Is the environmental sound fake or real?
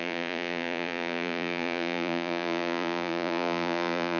fake